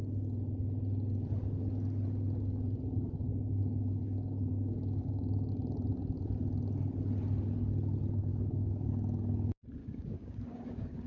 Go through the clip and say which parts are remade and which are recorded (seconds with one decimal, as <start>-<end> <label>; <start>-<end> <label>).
0.0-3.3 recorded; 3.3-5.5 remade; 5.5-8.3 recorded; 8.3-8.9 remade; 8.9-9.8 recorded; 9.8-11.1 remade